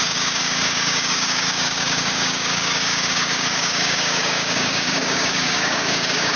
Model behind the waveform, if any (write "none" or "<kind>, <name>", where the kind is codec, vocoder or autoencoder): codec, DAC